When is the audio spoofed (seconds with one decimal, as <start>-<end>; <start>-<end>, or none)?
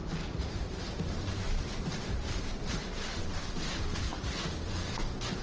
0.0-3.2; 4.1-5.4